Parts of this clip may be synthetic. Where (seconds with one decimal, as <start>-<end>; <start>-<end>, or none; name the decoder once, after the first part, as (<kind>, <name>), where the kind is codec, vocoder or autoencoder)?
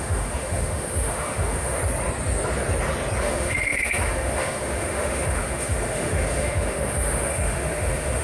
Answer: 0.0-1.8 (autoencoder, DAC-VAE); 3.2-8.2